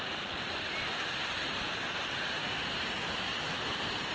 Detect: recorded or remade remade